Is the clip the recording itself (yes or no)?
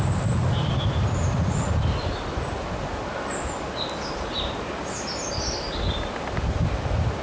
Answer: yes